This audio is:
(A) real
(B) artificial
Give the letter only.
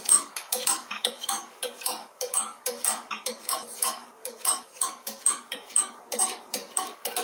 B